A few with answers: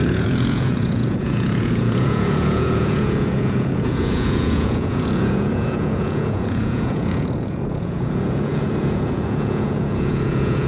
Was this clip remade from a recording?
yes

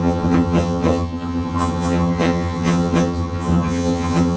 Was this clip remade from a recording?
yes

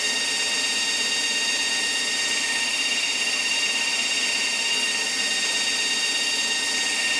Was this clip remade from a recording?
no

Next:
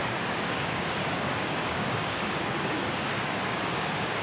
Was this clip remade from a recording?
yes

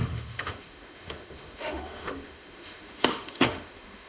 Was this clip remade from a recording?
yes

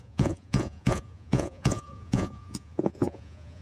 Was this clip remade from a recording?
yes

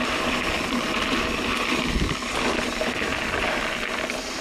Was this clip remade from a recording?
no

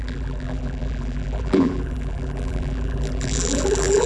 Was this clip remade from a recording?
yes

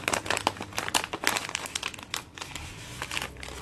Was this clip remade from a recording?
no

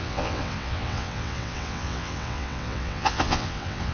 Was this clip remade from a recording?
yes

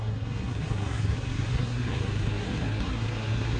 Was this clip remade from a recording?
yes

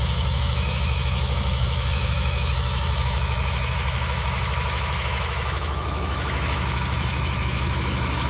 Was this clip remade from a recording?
yes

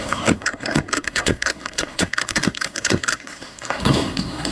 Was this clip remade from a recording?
yes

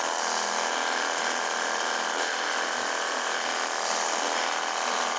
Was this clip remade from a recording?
no